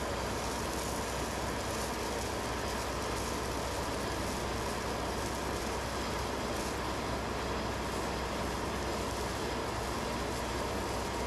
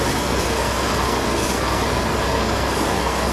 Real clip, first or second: first